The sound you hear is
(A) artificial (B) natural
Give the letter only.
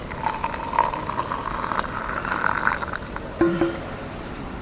B